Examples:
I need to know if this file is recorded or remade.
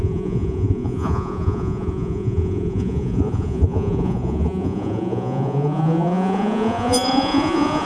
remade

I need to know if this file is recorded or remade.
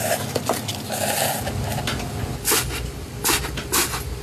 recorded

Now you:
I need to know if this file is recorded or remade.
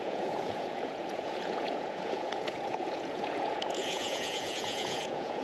remade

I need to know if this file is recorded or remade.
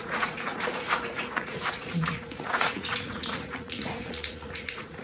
remade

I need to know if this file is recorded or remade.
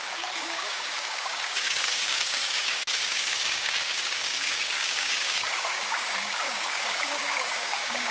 remade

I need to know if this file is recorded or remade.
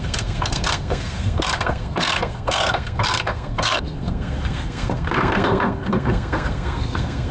remade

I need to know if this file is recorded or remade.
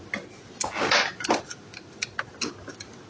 recorded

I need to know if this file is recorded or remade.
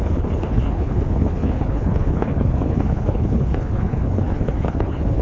remade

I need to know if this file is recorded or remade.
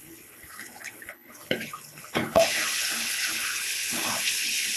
remade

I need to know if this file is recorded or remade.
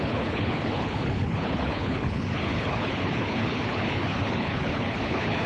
remade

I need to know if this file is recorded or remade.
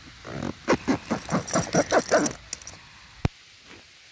recorded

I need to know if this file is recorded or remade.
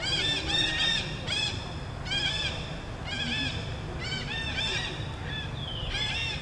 recorded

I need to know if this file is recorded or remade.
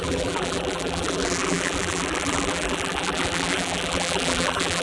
remade